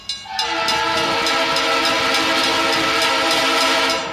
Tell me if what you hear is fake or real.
real